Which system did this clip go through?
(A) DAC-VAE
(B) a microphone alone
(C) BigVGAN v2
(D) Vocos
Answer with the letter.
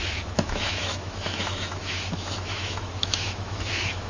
A